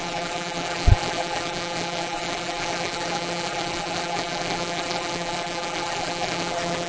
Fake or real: fake